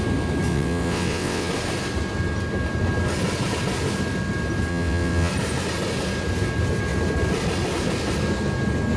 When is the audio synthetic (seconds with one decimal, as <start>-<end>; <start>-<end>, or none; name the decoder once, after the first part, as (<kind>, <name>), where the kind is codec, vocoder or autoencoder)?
0.5-1.5 (vocoder, WaveNeXt); 4.7-5.3